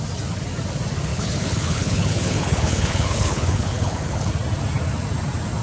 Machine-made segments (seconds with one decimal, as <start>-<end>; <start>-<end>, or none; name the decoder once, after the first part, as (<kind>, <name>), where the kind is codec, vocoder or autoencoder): 1.1-4.3 (codec, HILCodec)